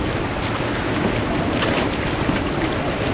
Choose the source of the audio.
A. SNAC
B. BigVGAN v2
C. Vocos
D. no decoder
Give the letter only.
D